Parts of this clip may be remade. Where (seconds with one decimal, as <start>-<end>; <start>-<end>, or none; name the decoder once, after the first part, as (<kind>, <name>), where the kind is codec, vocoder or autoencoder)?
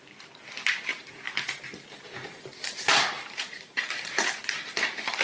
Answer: 0.9-1.6 (vocoder, BigVGAN v2); 2.2-4.4